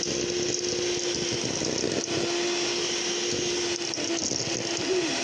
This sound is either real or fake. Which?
real